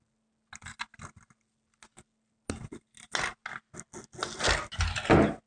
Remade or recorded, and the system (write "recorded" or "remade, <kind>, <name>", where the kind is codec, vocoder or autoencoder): recorded